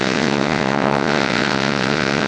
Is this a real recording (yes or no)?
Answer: no